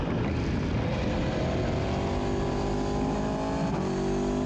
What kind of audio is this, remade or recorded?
recorded